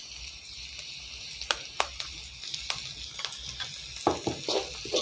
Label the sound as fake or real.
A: real